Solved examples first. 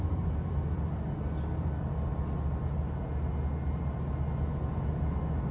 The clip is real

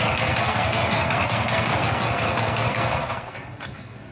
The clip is fake